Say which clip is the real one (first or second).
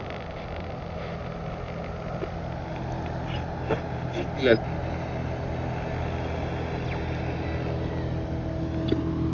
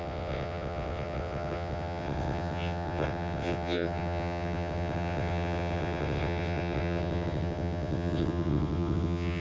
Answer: first